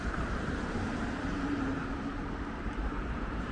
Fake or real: fake